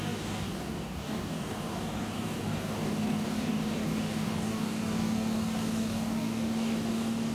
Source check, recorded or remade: remade